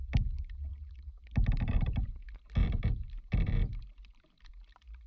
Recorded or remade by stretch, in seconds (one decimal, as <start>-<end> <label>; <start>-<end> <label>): 0.0-0.7 recorded; 0.7-2.1 remade; 2.1-2.6 recorded; 2.6-4.5 remade; 4.5-5.1 recorded